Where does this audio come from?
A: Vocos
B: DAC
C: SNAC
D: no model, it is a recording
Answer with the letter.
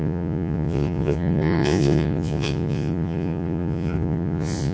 A